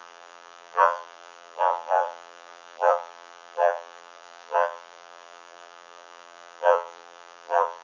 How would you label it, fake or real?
fake